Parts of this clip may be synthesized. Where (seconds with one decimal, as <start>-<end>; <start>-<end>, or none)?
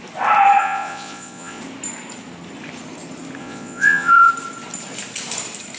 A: 0.6-1.6; 3.4-4.3